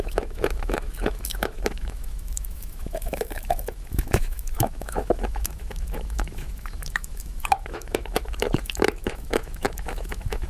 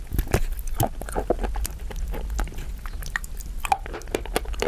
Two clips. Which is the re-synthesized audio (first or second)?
first